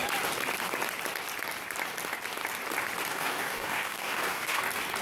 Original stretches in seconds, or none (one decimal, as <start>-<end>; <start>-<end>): 0.0-3.1; 4.6-5.0